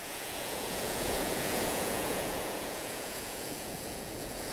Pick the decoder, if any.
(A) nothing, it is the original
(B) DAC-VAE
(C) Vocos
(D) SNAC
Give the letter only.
C